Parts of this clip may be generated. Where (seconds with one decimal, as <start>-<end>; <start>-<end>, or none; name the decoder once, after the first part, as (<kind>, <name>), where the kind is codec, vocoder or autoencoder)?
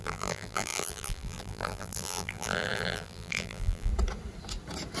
0.0-3.9 (vocoder, BigVGAN v2)